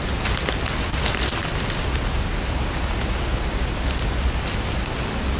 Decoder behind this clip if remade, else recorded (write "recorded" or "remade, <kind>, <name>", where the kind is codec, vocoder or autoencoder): recorded